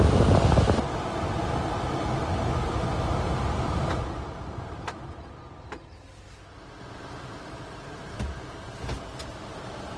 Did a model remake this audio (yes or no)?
no